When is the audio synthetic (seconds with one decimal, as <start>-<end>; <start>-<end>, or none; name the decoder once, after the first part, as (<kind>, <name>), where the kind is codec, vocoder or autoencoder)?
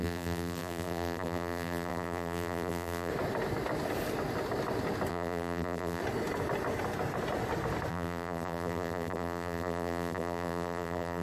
0.0-3.1 (vocoder, BigVGAN v2); 5.1-6.0; 7.9-11.2